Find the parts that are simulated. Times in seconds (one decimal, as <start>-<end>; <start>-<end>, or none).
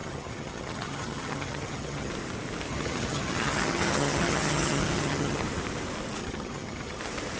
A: 0.0-2.1; 2.7-5.4; 6.2-7.0